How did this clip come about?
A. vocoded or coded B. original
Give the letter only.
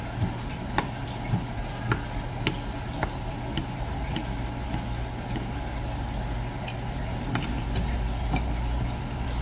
B